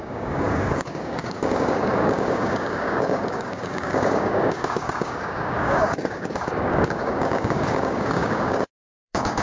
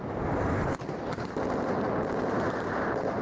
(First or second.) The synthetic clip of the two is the first